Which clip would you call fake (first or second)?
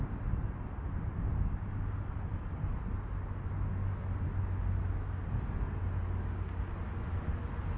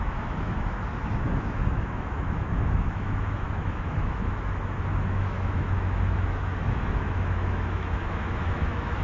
second